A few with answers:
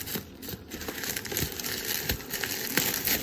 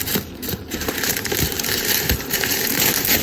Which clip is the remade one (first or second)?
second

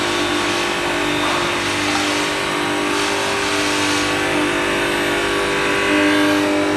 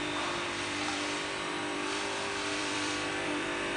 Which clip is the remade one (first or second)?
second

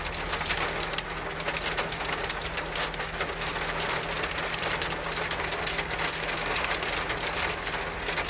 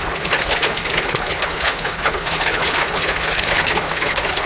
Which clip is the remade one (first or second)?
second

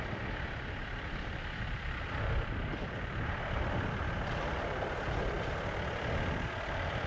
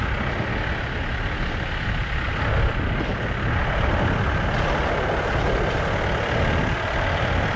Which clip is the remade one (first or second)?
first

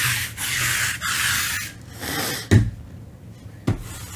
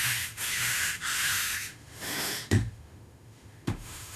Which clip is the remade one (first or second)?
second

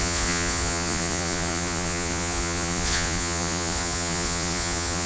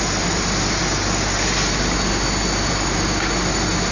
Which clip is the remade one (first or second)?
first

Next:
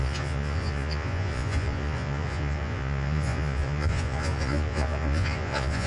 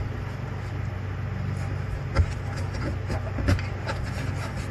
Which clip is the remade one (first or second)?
first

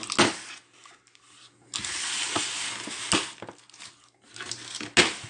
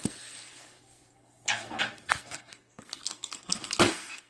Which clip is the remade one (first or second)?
second